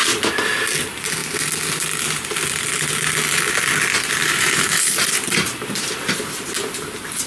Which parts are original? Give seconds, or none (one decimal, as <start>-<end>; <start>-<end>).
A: 0.0-4.2; 6.0-7.3